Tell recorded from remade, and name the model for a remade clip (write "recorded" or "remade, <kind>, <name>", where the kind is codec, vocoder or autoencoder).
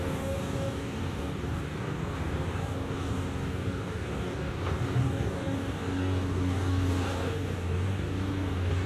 remade, codec, DAC